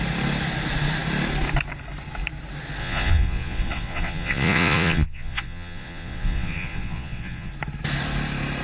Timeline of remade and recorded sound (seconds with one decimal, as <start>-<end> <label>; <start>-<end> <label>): 0.0-2.8 recorded; 2.8-7.5 remade; 7.5-8.6 recorded